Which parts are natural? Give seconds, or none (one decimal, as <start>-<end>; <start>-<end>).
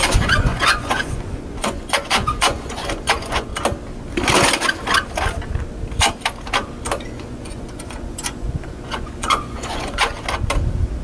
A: 3.5-7.1; 10.1-11.0